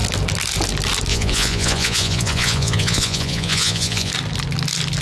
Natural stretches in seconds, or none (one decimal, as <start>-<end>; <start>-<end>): 0.0-1.1; 4.1-5.0